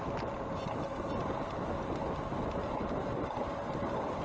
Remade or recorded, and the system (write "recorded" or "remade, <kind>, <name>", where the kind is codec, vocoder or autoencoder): recorded